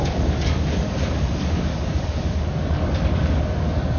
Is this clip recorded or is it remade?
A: remade